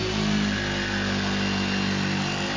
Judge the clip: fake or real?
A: real